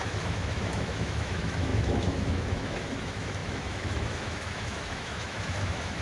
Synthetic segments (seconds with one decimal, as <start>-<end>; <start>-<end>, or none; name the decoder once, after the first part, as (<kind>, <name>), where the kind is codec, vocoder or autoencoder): 0.0-6.0 (autoencoder, DAC-VAE)